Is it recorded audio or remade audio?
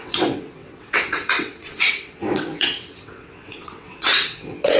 remade